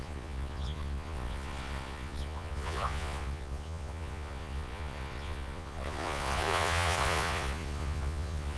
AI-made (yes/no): yes